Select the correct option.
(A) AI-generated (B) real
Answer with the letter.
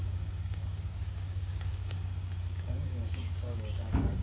A